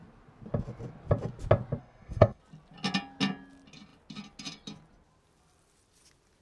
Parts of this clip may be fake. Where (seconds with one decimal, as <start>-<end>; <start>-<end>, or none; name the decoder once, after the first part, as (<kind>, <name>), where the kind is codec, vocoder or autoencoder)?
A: 1.8-2.4 (codec, SNAC)

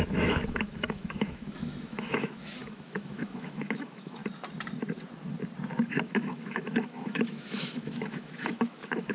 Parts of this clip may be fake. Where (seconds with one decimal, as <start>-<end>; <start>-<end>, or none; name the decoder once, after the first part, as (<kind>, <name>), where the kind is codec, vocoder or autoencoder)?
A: 0.0-4.2 (autoencoder, DAC-VAE); 5.9-9.1